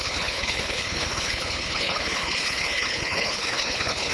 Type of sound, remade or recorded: remade